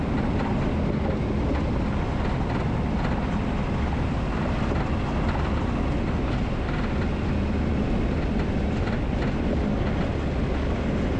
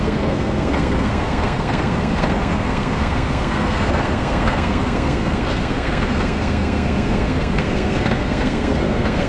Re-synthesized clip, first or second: second